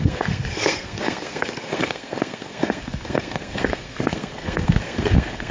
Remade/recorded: remade